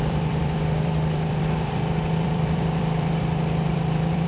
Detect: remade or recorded remade